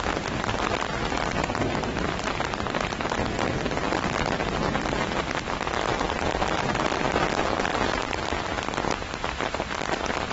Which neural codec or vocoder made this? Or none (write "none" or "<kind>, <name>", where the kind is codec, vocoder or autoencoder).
none